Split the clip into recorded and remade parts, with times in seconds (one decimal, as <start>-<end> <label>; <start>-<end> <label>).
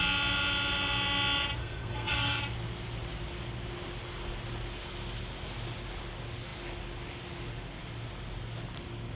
0.0-1.6 recorded; 1.6-2.4 remade; 2.4-9.2 recorded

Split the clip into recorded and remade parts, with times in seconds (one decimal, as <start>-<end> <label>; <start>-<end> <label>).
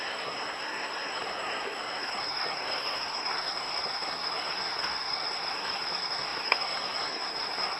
0.0-7.8 remade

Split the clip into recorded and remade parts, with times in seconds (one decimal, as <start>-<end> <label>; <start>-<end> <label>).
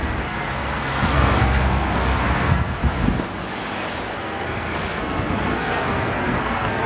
0.0-2.8 remade; 2.8-4.2 recorded; 4.2-6.9 remade